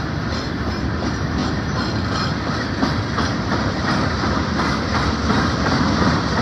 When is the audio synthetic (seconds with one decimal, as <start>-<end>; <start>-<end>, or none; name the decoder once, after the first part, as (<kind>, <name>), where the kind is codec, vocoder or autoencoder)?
none